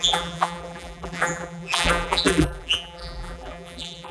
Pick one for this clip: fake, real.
fake